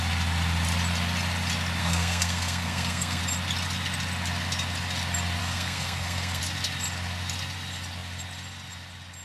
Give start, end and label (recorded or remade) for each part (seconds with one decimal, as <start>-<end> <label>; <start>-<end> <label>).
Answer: 0.0-1.8 recorded; 1.8-3.2 remade; 3.2-5.4 recorded; 5.4-6.4 remade; 6.4-9.2 recorded